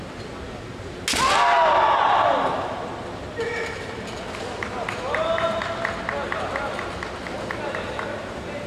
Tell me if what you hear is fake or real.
real